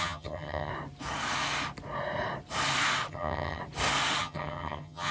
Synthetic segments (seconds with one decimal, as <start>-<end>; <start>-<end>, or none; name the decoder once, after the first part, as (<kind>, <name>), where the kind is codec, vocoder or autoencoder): 0.0-0.7 (vocoder, HiFi-GAN); 3.1-3.6; 4.2-5.1